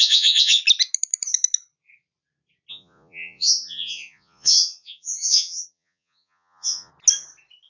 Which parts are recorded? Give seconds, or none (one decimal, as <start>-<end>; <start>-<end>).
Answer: 0.6-2.7; 6.9-7.7